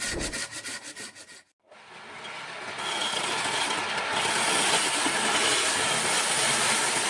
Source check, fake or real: real